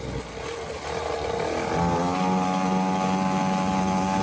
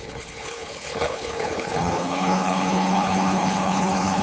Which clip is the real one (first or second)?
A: first